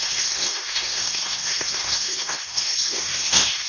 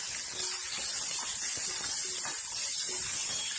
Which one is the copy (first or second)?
first